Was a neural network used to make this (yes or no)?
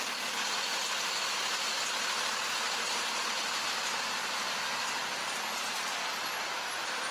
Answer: no